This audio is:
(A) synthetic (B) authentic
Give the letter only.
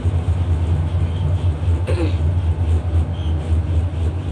B